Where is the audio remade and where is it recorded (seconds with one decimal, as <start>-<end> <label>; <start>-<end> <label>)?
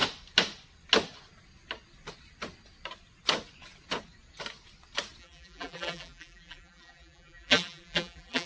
0.0-5.2 recorded; 5.2-8.5 remade